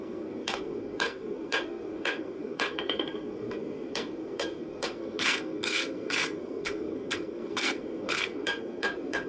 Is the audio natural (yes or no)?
no